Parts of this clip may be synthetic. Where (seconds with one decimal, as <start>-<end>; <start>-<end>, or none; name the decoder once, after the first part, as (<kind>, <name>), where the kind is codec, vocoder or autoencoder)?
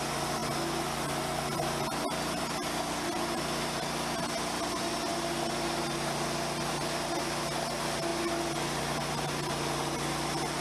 none